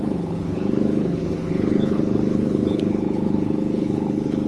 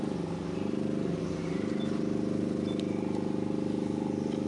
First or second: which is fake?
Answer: first